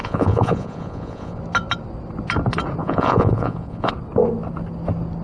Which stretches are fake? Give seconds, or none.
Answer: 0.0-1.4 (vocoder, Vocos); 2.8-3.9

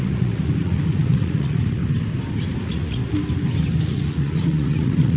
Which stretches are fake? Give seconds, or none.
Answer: 0.0-1.8 (vocoder, Vocos); 2.6-3.0; 3.8-5.2

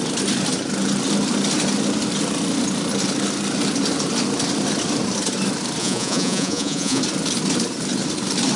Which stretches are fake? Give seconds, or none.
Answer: 5.8-7.0 (vocoder, Vocos)

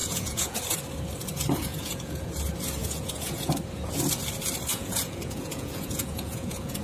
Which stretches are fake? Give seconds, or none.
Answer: 0.0-0.6 (vocoder, Vocos); 1.7-2.3; 2.8-3.5; 4.7-6.8

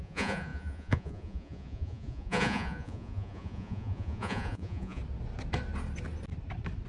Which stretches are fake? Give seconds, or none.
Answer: 0.0-5.0 (vocoder, Vocos)

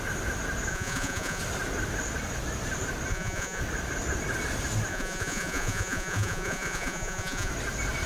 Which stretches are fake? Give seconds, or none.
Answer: 0.7-1.4 (vocoder, Vocos); 3.1-3.6; 4.9-7.5